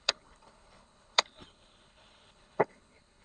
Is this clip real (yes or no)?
no